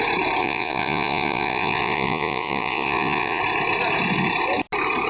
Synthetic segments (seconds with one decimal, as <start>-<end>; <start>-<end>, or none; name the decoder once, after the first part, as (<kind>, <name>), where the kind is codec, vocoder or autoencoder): 0.4-3.4 (vocoder, Vocos)